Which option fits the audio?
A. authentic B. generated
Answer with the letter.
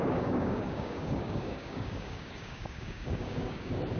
B